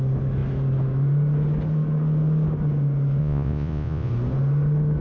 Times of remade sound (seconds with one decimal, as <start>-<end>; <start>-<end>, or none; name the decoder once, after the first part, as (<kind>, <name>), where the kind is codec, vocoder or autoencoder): 3.2-4.1 (vocoder, Vocos)